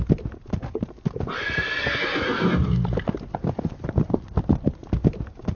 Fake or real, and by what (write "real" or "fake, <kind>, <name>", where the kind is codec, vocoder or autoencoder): real